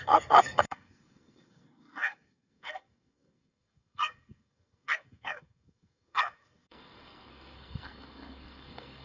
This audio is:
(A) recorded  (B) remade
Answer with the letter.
B